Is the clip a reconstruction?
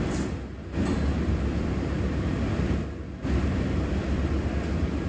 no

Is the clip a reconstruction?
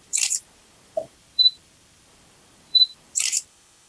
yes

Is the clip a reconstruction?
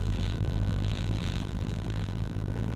yes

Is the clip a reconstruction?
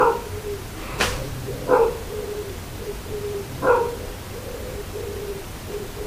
yes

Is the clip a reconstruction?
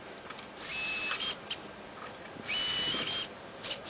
no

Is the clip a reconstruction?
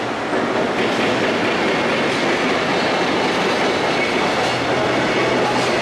no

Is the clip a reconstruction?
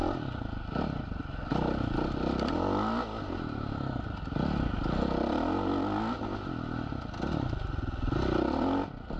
no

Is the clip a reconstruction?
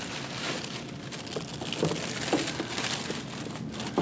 no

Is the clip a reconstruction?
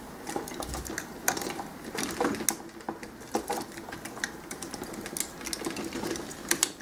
no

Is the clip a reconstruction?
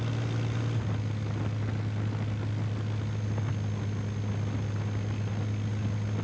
no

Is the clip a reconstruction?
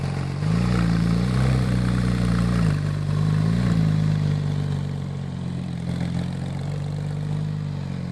yes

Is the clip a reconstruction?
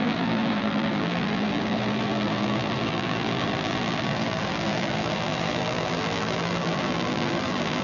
yes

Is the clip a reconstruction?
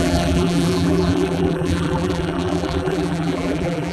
yes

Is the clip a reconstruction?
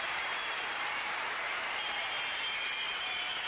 yes